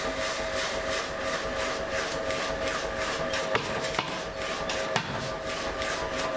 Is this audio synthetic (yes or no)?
no